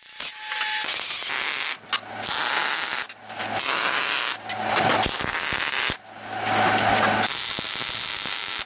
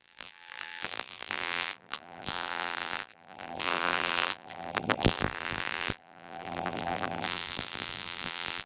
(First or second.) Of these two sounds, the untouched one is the first